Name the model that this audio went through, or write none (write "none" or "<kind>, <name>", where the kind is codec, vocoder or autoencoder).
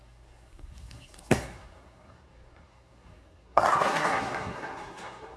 codec, SNAC